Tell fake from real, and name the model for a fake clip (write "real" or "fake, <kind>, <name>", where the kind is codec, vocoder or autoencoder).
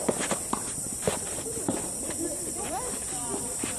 fake, vocoder, BigVGAN v2